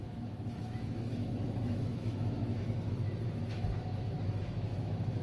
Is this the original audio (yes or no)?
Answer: no